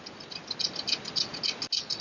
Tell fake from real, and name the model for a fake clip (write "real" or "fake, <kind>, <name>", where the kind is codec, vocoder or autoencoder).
real